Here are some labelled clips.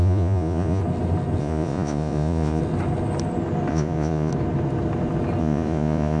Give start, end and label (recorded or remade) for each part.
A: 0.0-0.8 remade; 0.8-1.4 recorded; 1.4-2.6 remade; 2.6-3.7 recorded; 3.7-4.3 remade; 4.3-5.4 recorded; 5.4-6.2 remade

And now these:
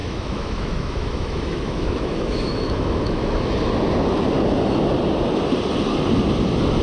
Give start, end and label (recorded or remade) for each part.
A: 0.0-3.7 remade; 3.7-6.8 recorded

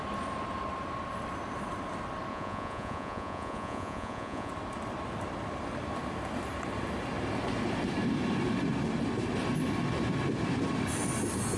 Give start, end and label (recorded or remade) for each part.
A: 0.0-2.3 recorded; 2.3-4.5 remade; 4.5-11.6 recorded

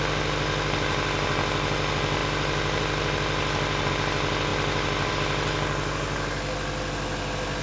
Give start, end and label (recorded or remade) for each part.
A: 0.0-7.6 recorded

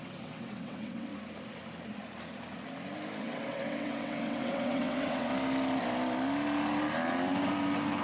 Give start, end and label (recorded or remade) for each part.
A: 0.0-1.1 remade; 1.1-3.2 recorded; 3.2-5.3 remade; 5.3-8.0 recorded

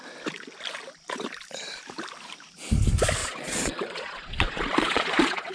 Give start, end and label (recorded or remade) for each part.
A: 0.0-3.2 recorded; 3.2-5.5 remade

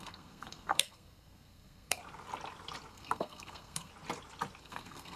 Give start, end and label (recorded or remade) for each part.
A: 0.0-2.0 remade; 2.0-2.9 recorded; 2.9-3.9 remade; 3.9-4.6 recorded; 4.6-5.2 remade

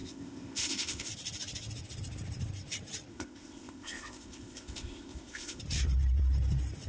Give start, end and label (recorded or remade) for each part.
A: 0.0-1.1 remade; 1.1-3.1 recorded; 3.1-5.6 remade; 5.6-6.9 recorded